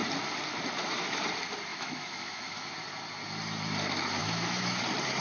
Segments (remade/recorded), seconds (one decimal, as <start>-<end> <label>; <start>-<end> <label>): 0.0-1.7 recorded; 1.7-2.7 remade; 2.7-4.2 recorded; 4.2-4.8 remade; 4.8-5.2 recorded